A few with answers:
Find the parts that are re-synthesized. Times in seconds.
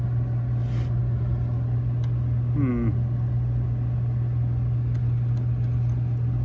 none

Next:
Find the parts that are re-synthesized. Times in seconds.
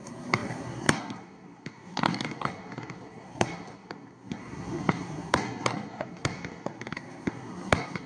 0.0-8.1 (codec, SNAC)